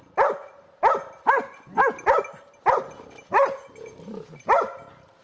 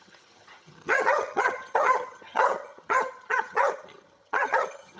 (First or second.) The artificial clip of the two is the second